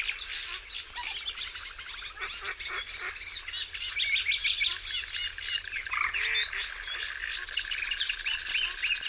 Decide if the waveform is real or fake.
real